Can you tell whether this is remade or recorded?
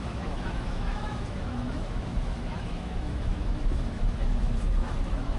remade